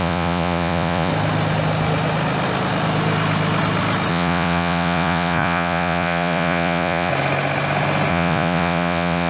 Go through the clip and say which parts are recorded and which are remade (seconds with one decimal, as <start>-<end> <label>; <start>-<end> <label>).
0.0-1.1 remade; 1.1-4.1 recorded; 4.1-7.1 remade; 7.1-8.1 recorded; 8.1-9.3 remade